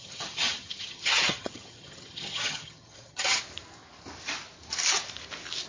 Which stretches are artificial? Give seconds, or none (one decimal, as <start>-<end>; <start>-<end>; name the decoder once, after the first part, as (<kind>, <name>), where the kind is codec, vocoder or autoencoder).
0.0-3.4 (vocoder, HiFi-GAN)